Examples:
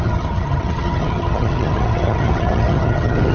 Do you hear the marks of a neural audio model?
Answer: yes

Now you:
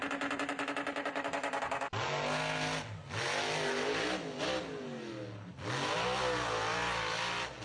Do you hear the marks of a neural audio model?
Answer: no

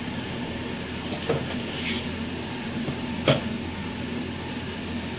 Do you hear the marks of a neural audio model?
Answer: no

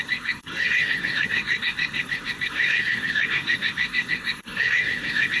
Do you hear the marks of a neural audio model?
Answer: yes